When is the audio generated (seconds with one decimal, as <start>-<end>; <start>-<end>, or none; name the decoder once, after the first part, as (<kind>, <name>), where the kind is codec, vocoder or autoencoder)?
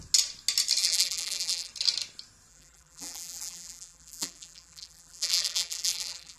0.8-1.7 (vocoder, BigVGAN v2); 2.5-6.4